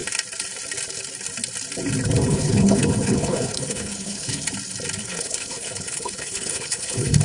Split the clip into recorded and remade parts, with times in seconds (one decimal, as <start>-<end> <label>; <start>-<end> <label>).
0.0-2.3 recorded; 2.3-4.4 remade; 4.4-5.0 recorded; 5.0-7.2 remade